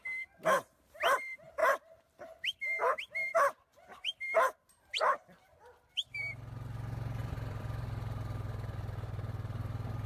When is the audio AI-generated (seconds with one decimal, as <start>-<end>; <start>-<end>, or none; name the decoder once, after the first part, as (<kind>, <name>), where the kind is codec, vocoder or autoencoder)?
7.2-8.9 (vocoder, BigVGAN v2)